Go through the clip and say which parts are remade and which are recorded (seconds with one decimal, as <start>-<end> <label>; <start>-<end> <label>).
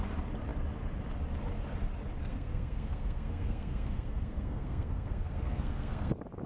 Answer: 0.0-2.3 recorded; 2.3-6.1 remade; 6.1-6.5 recorded